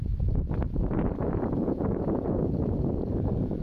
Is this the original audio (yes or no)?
no